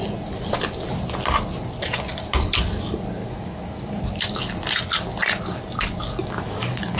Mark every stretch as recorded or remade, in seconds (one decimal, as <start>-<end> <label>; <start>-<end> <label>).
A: 0.0-3.2 recorded; 3.2-4.0 remade; 4.0-6.2 recorded; 6.2-7.0 remade